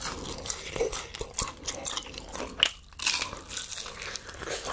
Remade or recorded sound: recorded